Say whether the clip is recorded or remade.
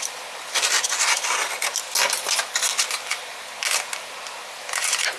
recorded